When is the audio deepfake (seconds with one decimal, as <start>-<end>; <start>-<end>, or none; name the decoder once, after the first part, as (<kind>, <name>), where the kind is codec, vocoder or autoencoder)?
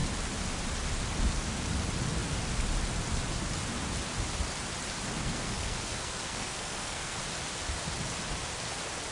5.2-7.2 (codec, SNAC)